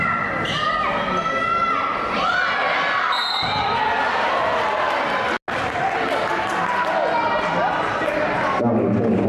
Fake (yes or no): no